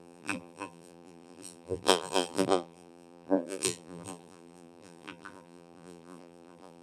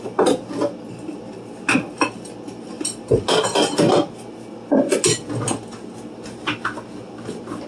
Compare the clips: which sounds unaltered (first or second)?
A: second